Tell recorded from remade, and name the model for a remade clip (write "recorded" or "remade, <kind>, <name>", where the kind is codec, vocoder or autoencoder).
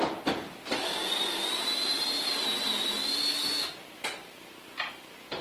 recorded